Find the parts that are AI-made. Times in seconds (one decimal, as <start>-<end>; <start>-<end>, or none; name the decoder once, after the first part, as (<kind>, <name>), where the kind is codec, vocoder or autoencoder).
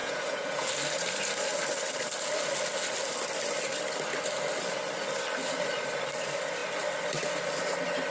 0.0-0.7 (vocoder, Vocos)